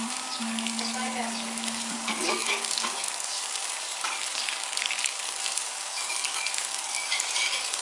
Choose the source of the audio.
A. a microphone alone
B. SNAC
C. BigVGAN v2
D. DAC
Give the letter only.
D